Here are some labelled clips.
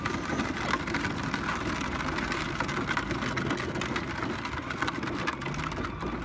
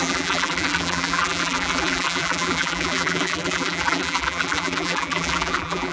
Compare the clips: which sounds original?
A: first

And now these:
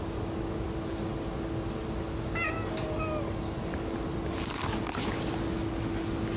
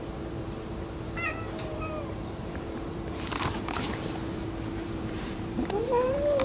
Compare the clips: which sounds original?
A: first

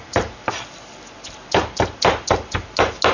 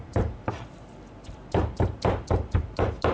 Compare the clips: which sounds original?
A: first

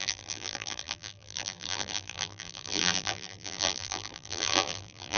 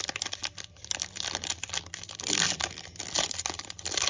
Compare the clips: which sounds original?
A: second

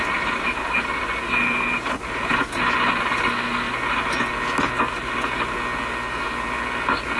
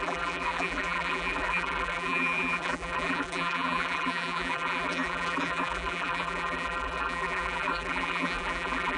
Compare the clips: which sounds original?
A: first